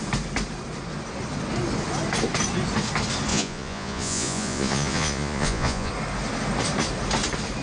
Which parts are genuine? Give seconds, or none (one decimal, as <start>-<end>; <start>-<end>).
0.0-3.3; 5.9-7.6